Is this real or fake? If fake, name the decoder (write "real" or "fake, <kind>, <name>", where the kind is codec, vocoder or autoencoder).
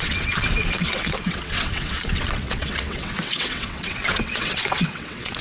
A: fake, vocoder, WaveNeXt